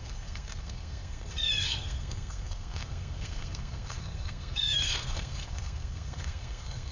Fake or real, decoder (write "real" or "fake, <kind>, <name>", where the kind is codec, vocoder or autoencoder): fake, codec, SNAC